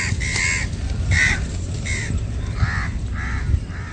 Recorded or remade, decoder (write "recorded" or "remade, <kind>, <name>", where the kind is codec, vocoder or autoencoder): recorded